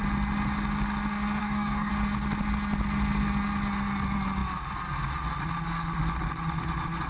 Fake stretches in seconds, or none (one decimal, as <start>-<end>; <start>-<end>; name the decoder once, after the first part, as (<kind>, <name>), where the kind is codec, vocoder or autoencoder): 1.4-1.9 (codec, DAC)